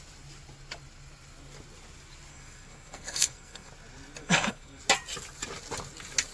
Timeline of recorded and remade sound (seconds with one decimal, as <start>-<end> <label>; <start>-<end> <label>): 0.0-2.3 recorded; 2.3-3.7 remade; 3.7-4.2 recorded; 4.2-4.8 remade; 4.8-6.3 recorded